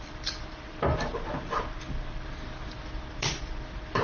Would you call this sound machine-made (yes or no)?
yes